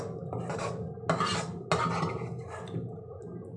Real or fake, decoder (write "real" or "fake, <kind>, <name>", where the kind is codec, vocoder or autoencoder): real